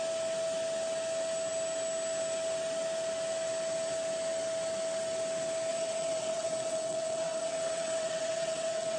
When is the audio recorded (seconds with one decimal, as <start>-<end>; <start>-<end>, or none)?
0.0-5.7

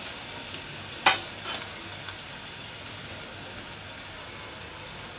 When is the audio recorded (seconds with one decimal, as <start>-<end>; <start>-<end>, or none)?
0.0-5.2

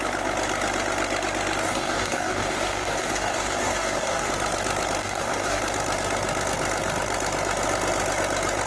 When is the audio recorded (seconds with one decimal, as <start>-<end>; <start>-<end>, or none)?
0.0-1.6; 4.3-5.0; 5.6-8.7

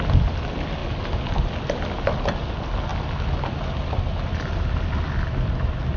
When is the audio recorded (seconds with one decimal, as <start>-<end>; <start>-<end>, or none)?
0.0-6.0